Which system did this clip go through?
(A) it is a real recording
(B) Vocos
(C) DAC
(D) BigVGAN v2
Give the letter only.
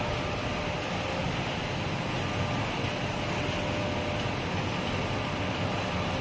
A